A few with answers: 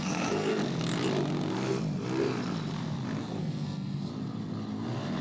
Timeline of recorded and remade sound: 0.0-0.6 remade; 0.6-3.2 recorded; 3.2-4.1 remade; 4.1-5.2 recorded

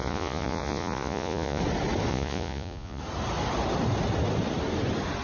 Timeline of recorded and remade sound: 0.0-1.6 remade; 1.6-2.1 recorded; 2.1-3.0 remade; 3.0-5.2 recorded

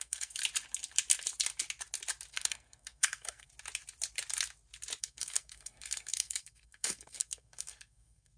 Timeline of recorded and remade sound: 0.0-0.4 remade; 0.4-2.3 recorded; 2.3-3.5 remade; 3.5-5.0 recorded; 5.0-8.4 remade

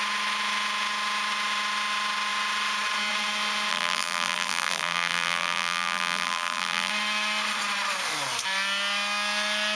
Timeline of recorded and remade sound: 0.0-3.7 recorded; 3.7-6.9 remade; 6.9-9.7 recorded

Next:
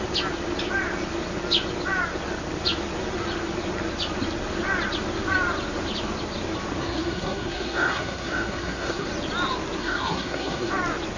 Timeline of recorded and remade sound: 0.0-6.8 recorded; 6.8-9.1 remade; 9.1-9.8 recorded; 9.8-10.7 remade; 10.7-11.2 recorded